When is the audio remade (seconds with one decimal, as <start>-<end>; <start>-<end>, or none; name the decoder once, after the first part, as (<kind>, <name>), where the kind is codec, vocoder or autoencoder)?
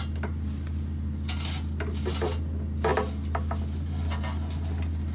none